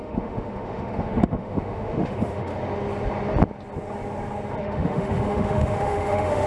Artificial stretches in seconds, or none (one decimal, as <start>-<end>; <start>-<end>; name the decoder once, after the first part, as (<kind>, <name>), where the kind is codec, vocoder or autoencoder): 0.0-2.5 (autoencoder, DAC-VAE); 4.6-6.5

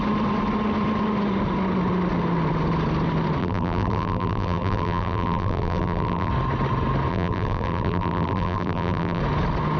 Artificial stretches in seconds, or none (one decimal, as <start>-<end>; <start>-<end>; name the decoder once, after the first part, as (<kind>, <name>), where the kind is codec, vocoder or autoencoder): 3.4-6.3 (vocoder, BigVGAN v2); 7.1-9.2

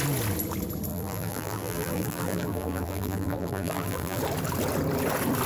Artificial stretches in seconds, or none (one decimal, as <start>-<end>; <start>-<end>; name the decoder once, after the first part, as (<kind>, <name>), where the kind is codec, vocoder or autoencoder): 0.9-4.2 (vocoder, BigVGAN v2)

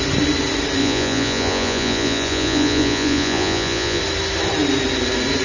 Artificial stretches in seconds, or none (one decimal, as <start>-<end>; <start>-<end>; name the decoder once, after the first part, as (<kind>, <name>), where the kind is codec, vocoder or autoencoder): 0.8-4.0 (vocoder, Vocos)

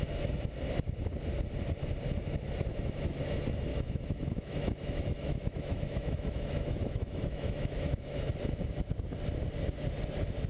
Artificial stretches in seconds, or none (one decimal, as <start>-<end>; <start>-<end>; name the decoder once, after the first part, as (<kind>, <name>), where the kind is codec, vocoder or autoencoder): 2.7-3.2 (autoencoder, DAC-VAE); 3.7-8.4

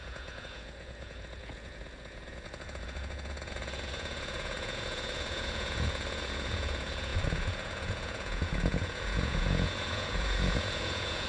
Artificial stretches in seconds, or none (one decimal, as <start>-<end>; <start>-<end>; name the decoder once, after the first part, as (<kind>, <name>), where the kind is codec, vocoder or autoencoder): 0.0-11.3 (vocoder, Vocos)

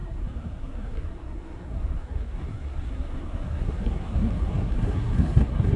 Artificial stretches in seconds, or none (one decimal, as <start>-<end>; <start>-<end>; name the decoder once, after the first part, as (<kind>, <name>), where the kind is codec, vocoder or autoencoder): 0.0-5.8 (codec, SNAC)

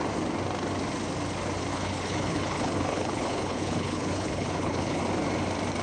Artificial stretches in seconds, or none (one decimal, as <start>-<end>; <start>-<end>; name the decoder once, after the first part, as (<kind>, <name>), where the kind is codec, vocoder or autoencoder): 1.7-5.0 (codec, HILCodec)